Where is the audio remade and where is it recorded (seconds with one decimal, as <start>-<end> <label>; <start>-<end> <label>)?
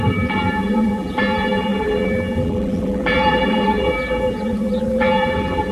0.0-5.7 remade